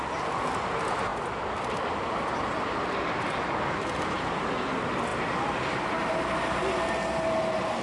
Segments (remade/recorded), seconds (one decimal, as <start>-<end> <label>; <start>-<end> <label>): 0.0-7.8 recorded